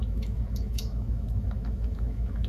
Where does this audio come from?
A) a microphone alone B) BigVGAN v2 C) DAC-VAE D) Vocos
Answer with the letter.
C